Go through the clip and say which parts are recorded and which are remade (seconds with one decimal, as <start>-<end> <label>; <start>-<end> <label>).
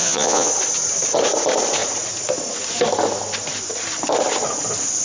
0.0-0.5 remade; 0.5-5.0 recorded